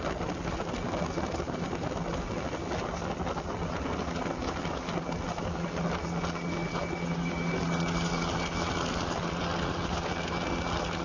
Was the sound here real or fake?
real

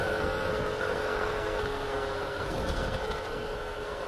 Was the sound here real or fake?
fake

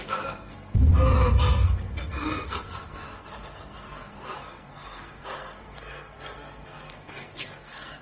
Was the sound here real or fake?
fake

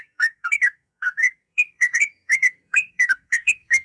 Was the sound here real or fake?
fake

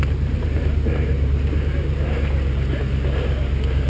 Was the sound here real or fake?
real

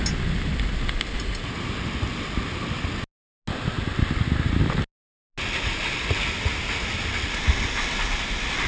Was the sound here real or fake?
real